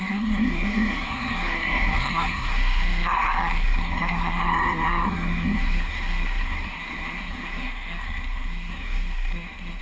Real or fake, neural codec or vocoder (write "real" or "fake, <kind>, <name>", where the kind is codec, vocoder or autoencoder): fake, codec, SNAC